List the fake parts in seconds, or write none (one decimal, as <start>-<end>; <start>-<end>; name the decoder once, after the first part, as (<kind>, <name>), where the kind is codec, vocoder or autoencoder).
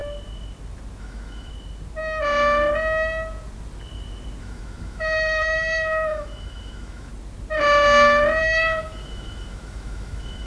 1.0-1.5 (autoencoder, DAC-VAE); 4.4-7.1; 8.4-10.5